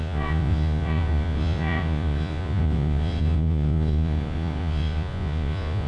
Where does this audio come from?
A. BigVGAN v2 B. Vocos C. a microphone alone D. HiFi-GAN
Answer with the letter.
B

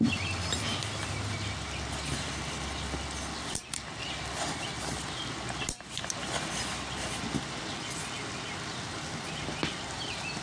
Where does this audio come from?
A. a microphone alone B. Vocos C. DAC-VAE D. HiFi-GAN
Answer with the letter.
A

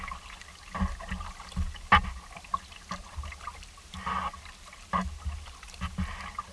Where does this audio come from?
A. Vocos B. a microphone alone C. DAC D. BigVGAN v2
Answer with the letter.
B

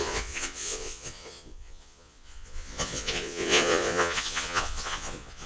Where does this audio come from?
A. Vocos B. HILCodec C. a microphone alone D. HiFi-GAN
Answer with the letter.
A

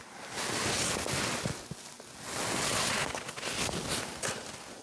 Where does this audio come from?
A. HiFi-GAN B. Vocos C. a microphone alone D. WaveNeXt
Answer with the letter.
C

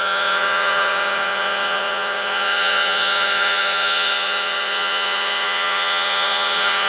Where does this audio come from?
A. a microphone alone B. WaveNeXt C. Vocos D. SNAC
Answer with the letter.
C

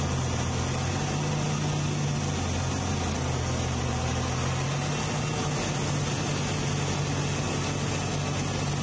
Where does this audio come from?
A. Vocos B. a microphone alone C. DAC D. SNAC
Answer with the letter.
B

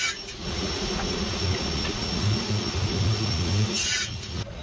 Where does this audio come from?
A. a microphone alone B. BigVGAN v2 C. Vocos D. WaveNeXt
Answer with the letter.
C